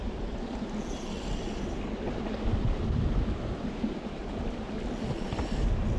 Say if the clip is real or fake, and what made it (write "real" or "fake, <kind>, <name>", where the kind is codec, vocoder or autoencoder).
real